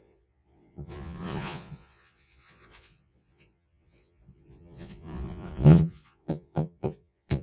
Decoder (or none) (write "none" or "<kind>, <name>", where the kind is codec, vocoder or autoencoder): vocoder, Vocos